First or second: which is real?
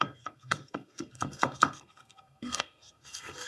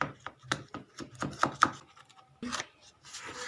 second